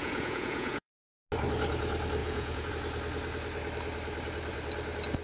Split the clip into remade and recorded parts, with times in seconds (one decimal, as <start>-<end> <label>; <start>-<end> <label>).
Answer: 0.0-1.1 remade; 1.1-2.2 recorded; 2.2-2.7 remade; 2.7-5.2 recorded